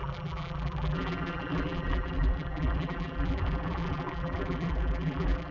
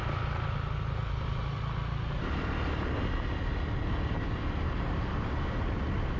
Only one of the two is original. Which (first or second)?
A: second